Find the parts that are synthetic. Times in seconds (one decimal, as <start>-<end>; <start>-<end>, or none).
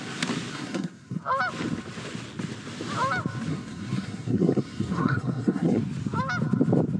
0.5-1.2; 3.5-5.8